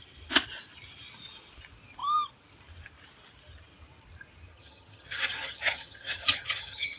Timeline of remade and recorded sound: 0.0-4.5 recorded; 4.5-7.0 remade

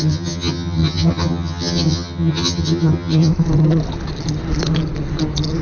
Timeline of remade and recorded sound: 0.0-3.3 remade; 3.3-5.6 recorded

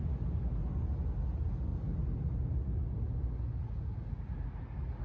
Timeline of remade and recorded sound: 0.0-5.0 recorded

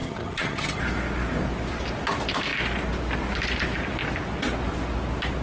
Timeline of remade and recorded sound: 0.0-0.8 remade; 0.8-5.4 recorded